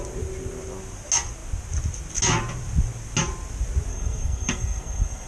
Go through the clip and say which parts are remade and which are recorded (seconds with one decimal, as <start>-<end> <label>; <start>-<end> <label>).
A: 0.0-3.9 recorded; 3.9-5.3 remade